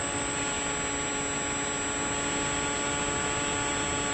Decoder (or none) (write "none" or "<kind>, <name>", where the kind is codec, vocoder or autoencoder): none